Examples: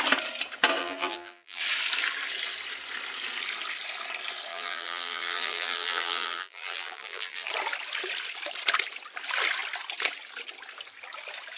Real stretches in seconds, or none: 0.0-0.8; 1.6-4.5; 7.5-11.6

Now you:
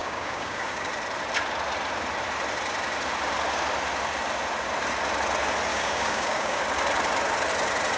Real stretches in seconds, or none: 0.9-5.7; 6.6-8.0

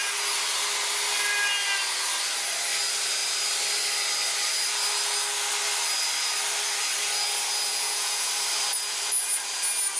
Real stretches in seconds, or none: 0.0-7.7; 8.3-10.0

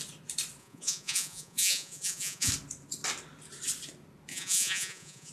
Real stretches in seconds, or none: 0.0-0.6; 2.5-4.3

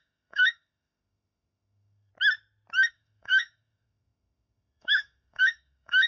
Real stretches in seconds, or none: 2.1-2.9